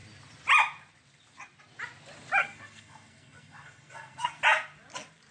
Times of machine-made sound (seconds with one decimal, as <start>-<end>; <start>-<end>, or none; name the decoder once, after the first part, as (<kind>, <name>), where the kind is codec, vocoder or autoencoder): 2.4-4.4 (codec, SNAC)

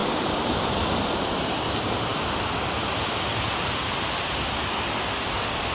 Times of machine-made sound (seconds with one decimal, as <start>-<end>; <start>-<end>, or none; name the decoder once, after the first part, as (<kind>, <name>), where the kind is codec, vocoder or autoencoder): 0.0-0.8 (vocoder, BigVGAN v2)